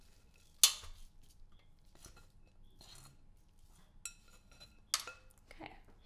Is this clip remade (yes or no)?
no